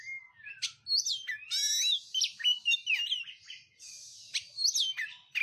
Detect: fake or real real